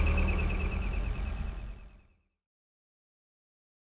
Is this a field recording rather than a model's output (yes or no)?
yes